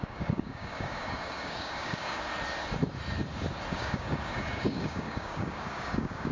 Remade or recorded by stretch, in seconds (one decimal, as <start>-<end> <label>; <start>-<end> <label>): 0.0-2.3 remade; 2.3-3.7 recorded; 3.7-6.3 remade